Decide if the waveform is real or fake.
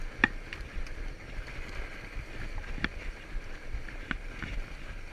real